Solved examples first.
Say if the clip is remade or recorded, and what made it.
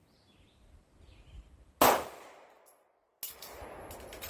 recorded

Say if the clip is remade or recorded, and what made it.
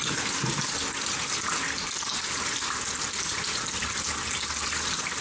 recorded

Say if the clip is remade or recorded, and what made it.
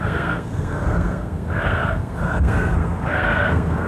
remade, codec, SNAC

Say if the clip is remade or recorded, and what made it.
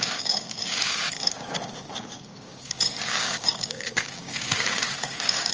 remade, codec, DAC